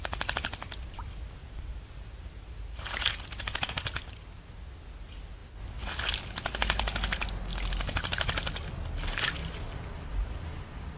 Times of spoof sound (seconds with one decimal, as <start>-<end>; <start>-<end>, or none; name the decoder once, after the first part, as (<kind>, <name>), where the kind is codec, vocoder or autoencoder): 1.4-3.7 (vocoder, BigVGAN v2); 9.4-10.6